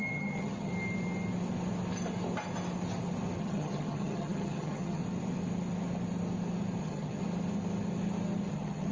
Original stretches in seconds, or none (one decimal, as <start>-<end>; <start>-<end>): 0.7-3.4; 5.0-6.8; 7.2-8.5